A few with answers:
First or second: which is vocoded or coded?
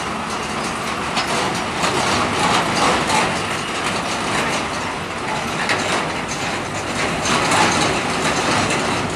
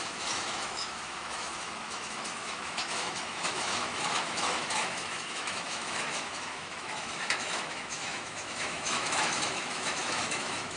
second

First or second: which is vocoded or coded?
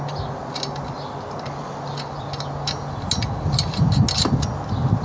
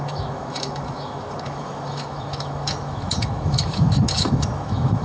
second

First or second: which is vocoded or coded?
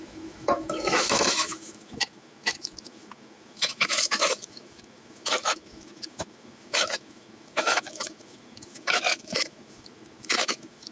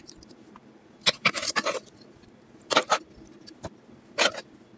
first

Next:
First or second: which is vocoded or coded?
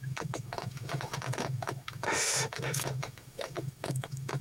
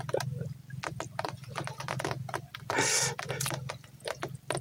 first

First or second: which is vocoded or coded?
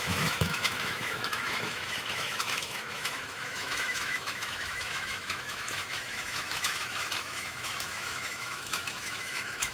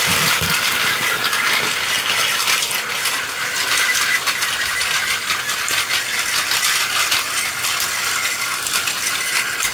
first